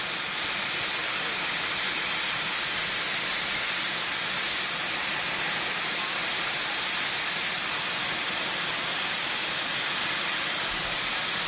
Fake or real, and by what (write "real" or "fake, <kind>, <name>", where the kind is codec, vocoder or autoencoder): real